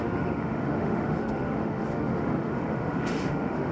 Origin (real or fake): fake